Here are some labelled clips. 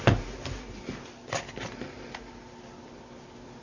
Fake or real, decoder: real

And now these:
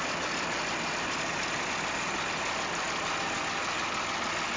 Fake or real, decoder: real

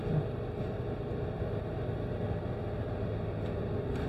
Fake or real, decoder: real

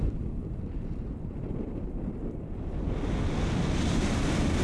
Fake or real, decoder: real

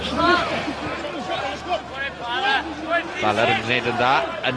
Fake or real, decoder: real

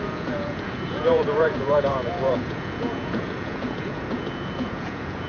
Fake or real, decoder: fake, vocoder, Vocos